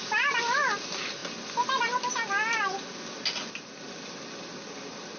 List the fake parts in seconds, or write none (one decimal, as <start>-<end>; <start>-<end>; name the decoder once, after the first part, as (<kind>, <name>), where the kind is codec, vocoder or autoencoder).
none